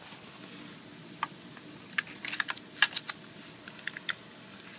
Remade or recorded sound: recorded